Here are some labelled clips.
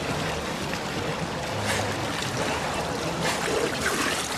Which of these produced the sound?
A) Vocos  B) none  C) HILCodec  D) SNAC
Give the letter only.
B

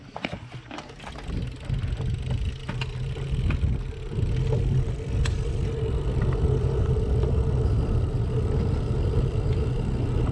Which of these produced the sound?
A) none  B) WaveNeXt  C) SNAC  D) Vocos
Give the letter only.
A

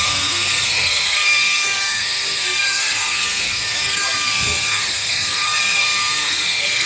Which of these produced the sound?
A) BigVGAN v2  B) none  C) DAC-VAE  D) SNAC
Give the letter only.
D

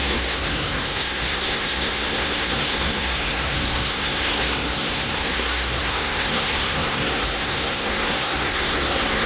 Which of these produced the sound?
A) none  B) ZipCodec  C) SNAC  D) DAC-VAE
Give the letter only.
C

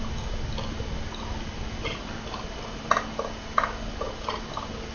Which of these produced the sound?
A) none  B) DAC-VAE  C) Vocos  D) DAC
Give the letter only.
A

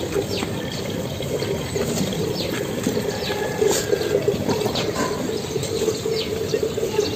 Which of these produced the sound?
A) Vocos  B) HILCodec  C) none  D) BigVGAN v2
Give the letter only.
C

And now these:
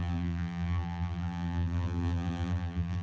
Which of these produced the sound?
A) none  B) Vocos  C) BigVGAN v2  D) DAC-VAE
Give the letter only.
C